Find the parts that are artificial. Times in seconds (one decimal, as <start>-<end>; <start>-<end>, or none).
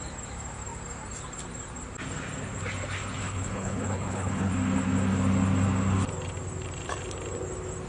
3.2-4.5